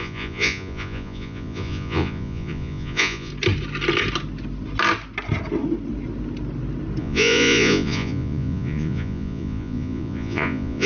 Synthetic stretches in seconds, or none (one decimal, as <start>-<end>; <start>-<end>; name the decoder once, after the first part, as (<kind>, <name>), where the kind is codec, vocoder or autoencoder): 0.0-3.3 (vocoder, Vocos); 7.0-10.9